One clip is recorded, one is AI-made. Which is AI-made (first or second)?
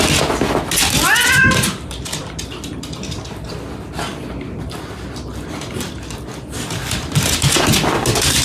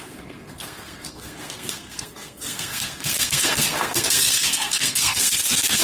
second